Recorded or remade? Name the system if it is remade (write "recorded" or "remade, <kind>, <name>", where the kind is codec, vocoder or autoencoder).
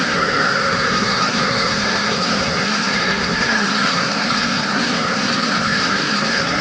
remade, codec, SNAC